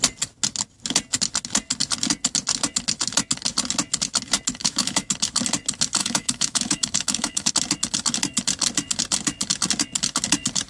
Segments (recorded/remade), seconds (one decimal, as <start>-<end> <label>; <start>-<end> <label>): 0.0-4.6 recorded; 4.6-5.1 remade; 5.1-6.0 recorded; 6.0-7.5 remade; 7.5-10.7 recorded